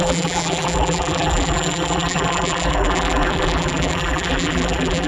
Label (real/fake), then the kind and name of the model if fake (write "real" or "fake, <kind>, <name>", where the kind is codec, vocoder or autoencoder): fake, vocoder, BigVGAN v2